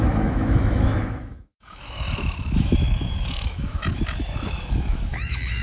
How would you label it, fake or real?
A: fake